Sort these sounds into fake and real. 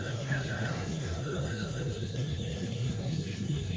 fake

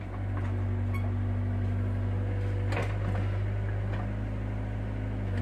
real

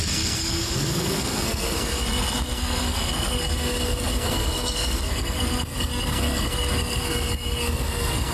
fake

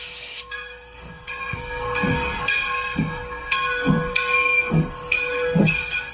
fake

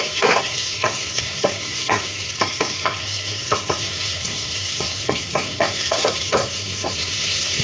fake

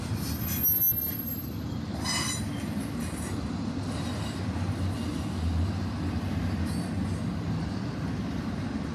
real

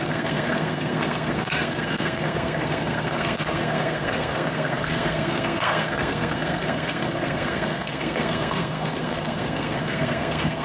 fake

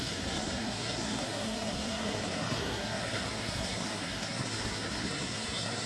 fake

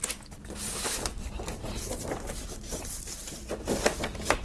real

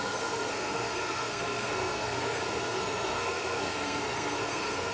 fake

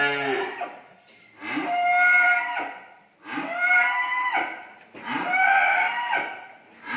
real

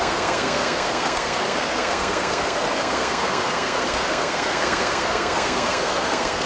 fake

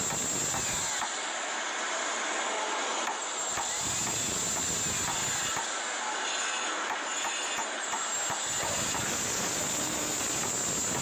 real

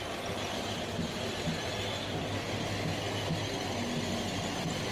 real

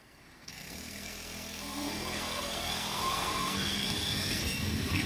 fake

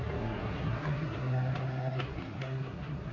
fake